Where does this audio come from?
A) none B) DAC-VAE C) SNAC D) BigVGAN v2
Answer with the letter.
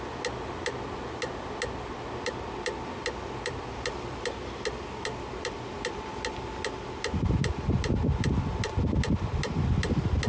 A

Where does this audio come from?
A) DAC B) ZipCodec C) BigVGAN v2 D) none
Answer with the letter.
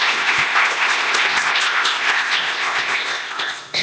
B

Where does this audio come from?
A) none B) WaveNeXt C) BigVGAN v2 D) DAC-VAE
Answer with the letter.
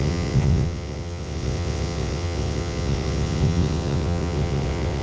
B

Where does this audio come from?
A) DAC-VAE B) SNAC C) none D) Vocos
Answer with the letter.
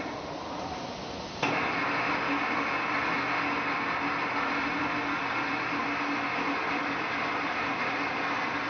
C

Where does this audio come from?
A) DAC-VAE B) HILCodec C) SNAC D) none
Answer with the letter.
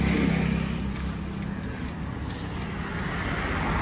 D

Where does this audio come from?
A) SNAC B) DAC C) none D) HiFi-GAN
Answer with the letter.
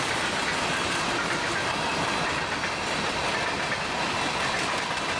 C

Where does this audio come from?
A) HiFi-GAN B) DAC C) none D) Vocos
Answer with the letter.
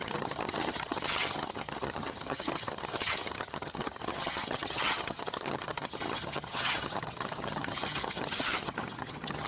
A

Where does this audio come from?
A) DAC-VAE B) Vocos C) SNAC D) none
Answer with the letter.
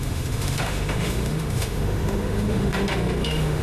A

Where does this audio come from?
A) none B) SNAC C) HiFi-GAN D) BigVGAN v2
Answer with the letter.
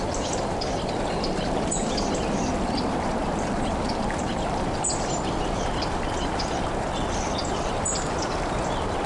D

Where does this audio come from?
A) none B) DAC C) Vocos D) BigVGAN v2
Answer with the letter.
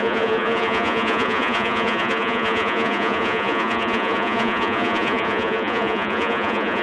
C